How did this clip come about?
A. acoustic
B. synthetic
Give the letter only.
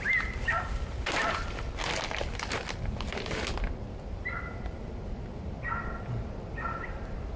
A